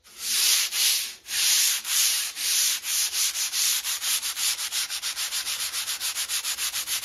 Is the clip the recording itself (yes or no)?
no